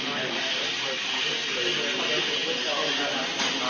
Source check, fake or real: real